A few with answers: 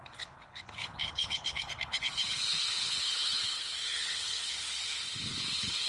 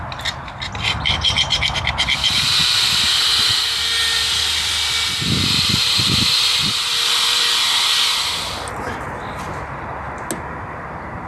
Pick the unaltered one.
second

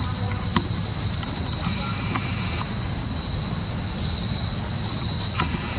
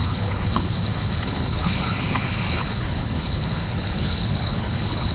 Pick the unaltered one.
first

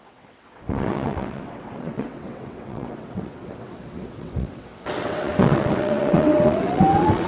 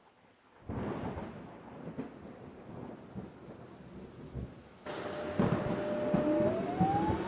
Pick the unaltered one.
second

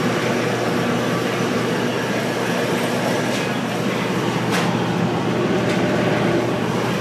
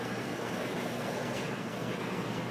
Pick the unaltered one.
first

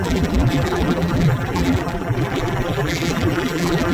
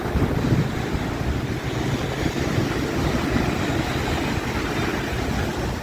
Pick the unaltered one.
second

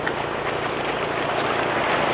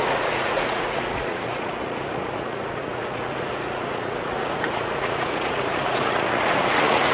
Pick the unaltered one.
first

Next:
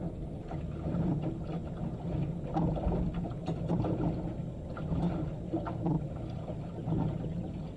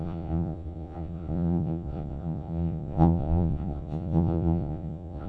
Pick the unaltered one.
first